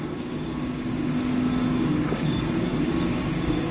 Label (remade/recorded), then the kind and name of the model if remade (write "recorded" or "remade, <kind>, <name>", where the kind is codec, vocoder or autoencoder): remade, codec, DAC